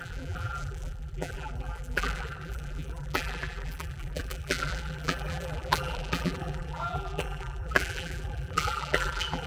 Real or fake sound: fake